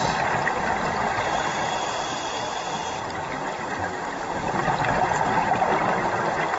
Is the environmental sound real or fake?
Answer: real